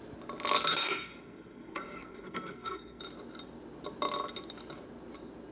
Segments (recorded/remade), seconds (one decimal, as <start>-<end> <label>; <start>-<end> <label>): 0.0-0.8 recorded; 0.8-3.0 remade; 3.0-5.5 recorded